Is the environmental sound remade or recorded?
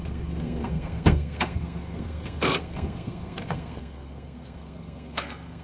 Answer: remade